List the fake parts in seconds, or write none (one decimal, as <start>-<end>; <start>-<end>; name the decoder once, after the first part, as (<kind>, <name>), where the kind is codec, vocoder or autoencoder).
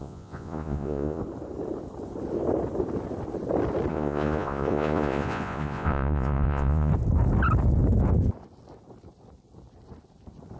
0.0-1.2 (vocoder, Vocos); 3.9-6.9